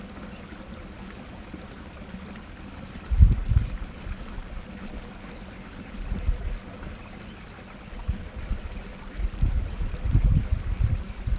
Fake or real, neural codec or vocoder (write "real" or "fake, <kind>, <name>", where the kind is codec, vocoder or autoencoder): real